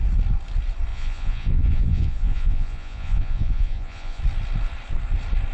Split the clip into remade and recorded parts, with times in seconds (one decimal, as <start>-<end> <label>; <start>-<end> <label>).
0.0-0.9 recorded; 0.9-4.2 remade; 4.2-5.5 recorded